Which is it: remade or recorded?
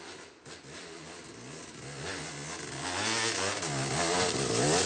recorded